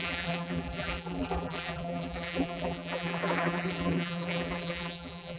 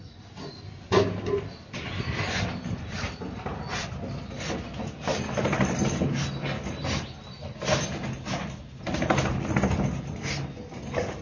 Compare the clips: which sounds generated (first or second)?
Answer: first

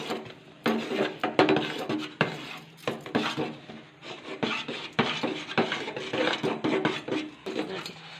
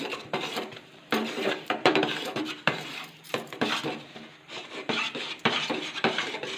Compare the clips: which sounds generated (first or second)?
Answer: second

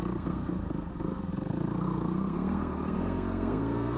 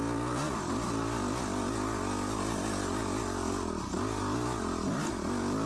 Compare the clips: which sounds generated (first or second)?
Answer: first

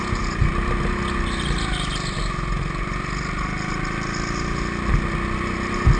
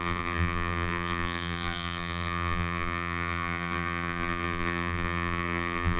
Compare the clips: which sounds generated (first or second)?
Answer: second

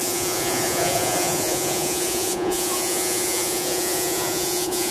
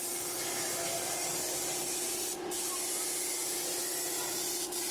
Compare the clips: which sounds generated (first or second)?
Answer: first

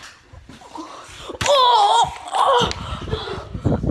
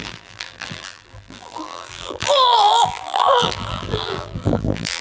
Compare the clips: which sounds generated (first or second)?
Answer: second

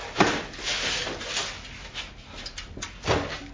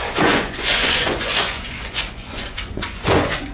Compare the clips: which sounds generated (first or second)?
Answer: second